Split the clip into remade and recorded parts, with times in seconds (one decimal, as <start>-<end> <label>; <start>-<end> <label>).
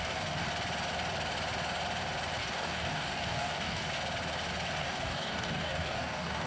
0.0-0.5 remade; 0.5-2.4 recorded; 2.4-3.8 remade; 3.8-4.8 recorded; 4.8-6.5 remade